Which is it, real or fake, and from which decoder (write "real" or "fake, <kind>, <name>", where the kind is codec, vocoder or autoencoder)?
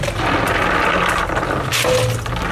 real